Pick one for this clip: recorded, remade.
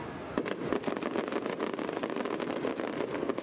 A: recorded